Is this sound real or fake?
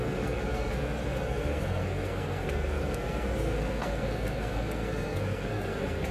fake